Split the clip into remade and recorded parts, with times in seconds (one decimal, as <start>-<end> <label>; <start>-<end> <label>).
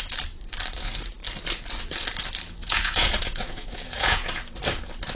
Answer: 0.0-2.6 recorded; 2.6-4.4 remade; 4.4-5.2 recorded